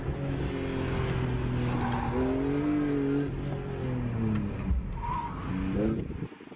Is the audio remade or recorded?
recorded